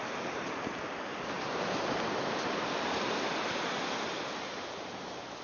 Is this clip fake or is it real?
real